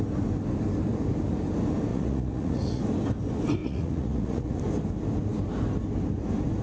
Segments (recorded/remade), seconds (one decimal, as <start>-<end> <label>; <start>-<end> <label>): 0.0-1.9 recorded; 1.9-2.8 remade; 2.8-3.6 recorded; 3.6-4.6 remade; 4.6-6.6 recorded